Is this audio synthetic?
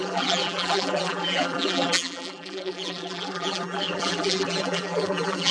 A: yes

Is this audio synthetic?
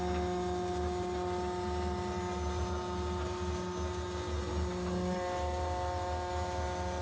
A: no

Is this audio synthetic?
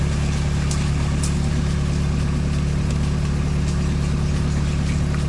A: no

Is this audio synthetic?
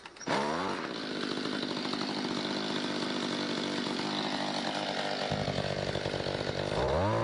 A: no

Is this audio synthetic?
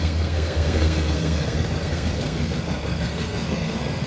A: yes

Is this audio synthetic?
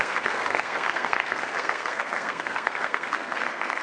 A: yes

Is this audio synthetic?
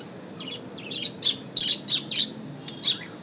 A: no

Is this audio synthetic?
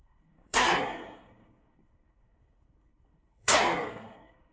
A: yes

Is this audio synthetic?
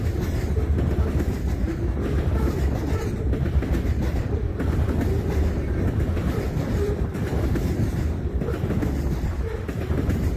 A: yes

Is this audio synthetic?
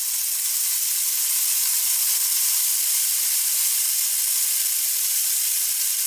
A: no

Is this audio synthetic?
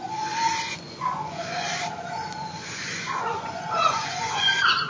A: yes